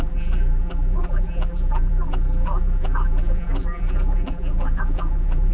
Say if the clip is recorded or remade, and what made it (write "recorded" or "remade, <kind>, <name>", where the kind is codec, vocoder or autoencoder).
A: remade, vocoder, BigVGAN v2